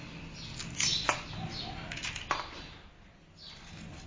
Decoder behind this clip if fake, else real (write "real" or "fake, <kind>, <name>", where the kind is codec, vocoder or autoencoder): real